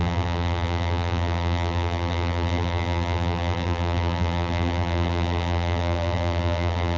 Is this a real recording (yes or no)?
no